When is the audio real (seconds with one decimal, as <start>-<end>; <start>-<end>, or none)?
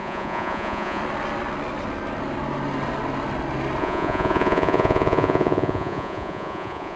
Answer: 1.0-3.8